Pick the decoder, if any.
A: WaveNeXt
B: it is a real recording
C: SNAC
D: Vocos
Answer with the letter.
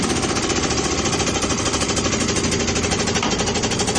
B